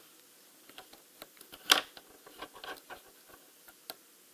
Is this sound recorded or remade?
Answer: recorded